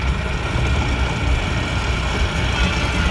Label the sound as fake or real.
real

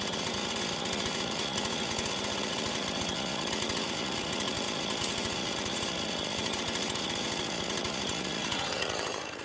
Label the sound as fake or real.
fake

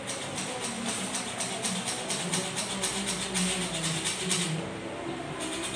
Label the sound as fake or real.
real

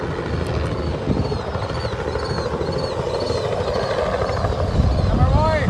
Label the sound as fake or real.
real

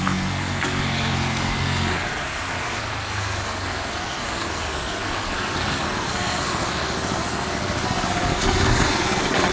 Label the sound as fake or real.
fake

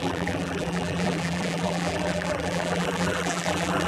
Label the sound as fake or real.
fake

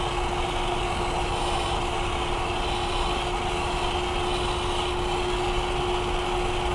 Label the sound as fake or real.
real